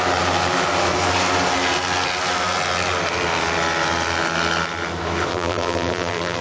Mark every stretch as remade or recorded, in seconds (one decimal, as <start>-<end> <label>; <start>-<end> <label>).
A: 0.0-5.3 recorded; 5.3-6.4 remade